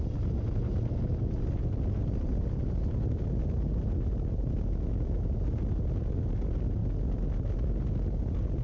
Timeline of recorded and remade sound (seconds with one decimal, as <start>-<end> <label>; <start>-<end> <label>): 0.0-8.6 recorded